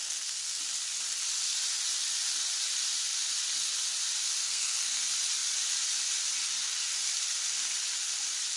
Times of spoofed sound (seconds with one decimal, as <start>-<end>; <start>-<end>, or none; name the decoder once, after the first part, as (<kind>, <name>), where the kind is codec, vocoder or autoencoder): 0.0-0.6 (codec, SNAC); 4.4-5.0